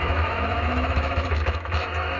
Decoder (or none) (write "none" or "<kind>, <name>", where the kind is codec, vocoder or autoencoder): autoencoder, DAC-VAE